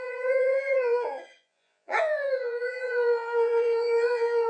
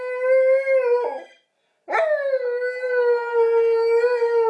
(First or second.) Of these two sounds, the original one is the second